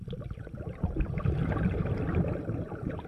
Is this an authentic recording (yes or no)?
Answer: no